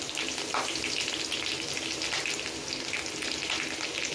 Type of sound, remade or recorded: recorded